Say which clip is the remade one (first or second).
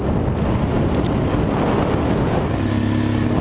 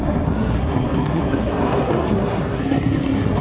second